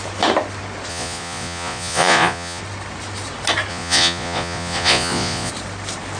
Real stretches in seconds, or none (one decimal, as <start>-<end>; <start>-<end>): 0.0-0.9; 2.6-3.7; 5.5-6.2